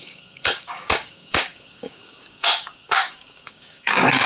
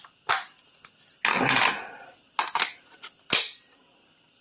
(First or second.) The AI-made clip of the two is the first